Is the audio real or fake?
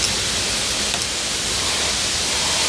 real